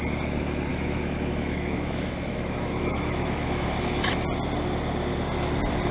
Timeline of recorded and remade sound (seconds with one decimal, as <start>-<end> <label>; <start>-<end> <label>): 0.0-0.7 recorded; 0.7-4.1 remade; 4.1-5.9 recorded